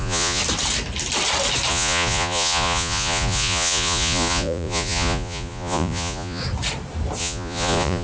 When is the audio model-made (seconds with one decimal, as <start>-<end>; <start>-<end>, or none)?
0.0-0.4; 1.7-6.4; 7.2-8.0

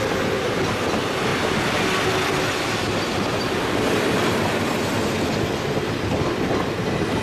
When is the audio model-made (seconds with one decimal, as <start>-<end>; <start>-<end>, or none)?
none

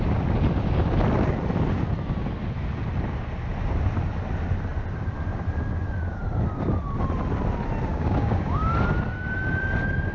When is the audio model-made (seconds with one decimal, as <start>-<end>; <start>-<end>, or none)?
7.9-8.7

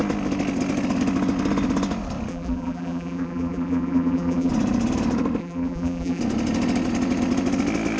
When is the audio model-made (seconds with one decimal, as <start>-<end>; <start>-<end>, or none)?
2.3-4.5; 5.4-6.2

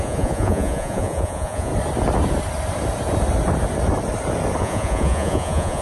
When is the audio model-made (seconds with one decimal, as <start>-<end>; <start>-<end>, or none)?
0.0-1.7; 4.6-5.8

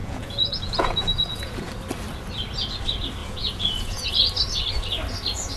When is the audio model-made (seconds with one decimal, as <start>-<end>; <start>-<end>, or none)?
0.0-1.7; 3.2-4.1